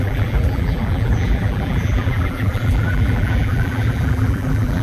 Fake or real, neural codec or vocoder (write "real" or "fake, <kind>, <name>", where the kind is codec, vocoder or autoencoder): fake, vocoder, BigVGAN v2